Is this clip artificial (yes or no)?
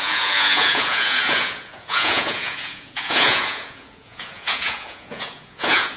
yes